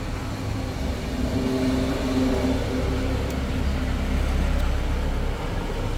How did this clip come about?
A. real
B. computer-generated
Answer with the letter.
A